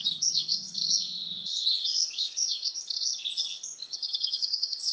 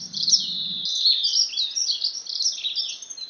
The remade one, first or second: first